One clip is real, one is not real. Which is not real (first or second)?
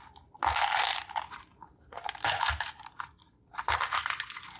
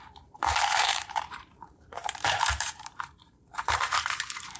second